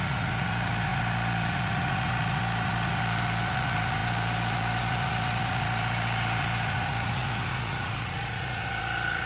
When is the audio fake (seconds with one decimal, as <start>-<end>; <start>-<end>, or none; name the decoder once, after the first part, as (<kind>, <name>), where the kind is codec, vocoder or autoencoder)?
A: 0.0-9.3 (vocoder, Vocos)